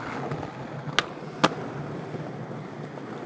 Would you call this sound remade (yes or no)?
no